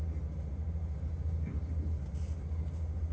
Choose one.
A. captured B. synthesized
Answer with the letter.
A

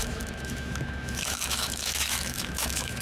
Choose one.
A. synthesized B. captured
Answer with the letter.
A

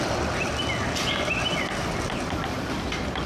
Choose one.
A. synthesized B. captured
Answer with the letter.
B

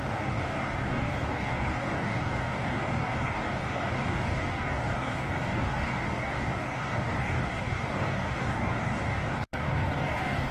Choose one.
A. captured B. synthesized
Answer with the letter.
B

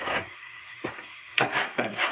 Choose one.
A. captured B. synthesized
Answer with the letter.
B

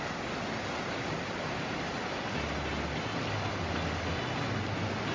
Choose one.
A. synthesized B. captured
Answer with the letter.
B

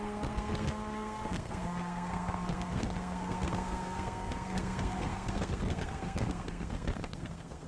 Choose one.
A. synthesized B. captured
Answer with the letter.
A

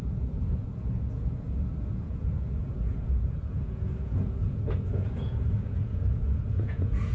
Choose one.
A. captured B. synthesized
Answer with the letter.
B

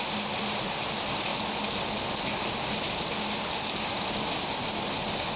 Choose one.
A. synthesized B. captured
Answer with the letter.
B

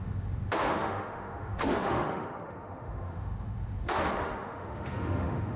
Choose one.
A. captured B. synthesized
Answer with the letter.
B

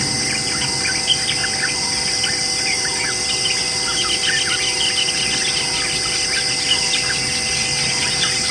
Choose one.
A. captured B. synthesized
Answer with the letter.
A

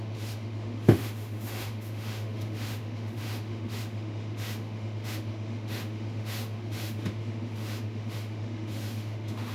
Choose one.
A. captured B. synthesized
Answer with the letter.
B